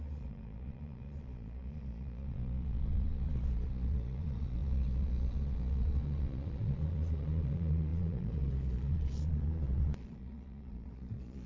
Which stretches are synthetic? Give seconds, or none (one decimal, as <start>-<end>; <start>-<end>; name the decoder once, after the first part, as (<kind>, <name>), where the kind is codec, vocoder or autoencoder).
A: 0.0-11.5 (vocoder, Vocos)